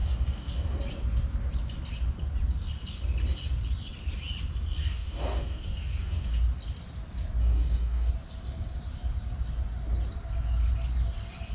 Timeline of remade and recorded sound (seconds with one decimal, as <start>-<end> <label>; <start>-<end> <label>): 0.0-0.8 remade; 0.8-4.8 recorded; 4.8-6.3 remade; 6.3-7.4 recorded; 7.4-8.1 remade; 8.1-11.5 recorded